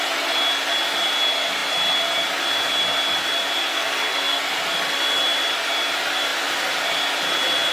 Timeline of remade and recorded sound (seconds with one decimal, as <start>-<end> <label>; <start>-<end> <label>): 0.0-3.7 recorded; 3.7-4.4 remade; 4.4-7.7 recorded